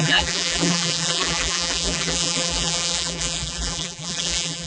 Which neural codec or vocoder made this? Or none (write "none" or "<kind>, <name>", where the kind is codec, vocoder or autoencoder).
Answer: vocoder, BigVGAN v2